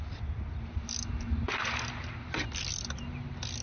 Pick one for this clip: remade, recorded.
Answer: recorded